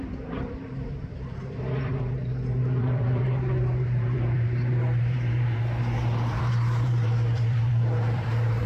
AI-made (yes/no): yes